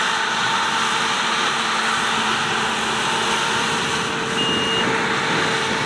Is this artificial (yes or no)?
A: no